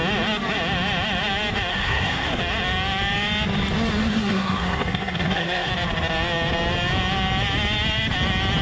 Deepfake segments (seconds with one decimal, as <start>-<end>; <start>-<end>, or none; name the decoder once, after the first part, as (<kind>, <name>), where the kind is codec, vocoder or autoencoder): 1.7-2.4 (codec, SNAC); 4.0-5.7